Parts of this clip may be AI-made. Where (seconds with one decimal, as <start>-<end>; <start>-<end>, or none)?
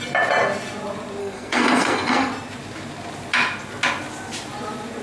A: 1.2-2.3